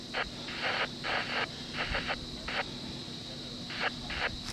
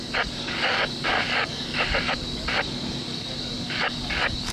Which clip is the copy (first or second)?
second